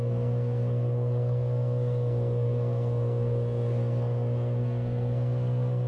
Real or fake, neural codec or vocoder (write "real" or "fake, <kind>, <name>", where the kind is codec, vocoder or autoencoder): fake, codec, SNAC